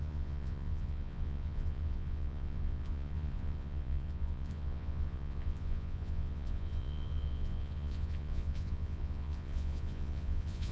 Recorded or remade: remade